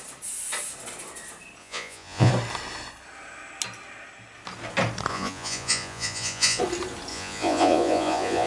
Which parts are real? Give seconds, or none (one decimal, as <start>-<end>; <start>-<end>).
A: 0.0-1.6; 2.3-5.1; 6.6-7.1